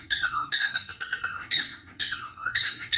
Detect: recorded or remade remade